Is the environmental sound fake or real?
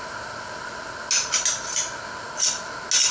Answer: real